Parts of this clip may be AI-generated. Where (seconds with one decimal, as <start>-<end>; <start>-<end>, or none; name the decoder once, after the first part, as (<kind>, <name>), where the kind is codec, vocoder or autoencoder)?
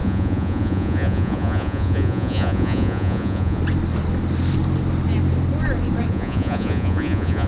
0.0-3.6 (vocoder, Vocos); 6.1-7.5